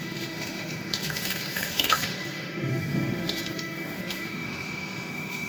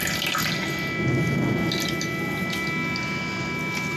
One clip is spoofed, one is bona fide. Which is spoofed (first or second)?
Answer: first